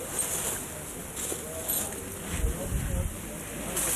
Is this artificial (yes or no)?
no